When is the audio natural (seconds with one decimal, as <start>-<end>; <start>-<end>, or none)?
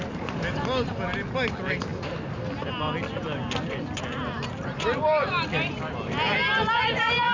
0.0-7.3